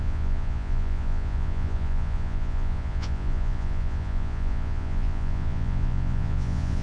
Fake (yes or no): yes